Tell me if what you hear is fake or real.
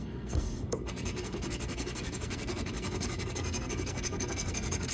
fake